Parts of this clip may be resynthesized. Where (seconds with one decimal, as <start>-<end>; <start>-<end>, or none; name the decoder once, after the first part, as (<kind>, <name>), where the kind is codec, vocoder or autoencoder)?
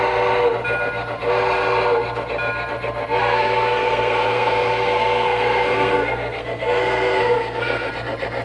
3.2-7.9 (codec, SNAC)